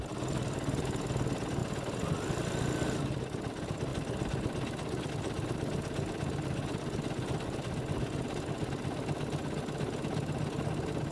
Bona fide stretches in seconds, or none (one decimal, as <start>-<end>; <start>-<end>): 0.0-11.1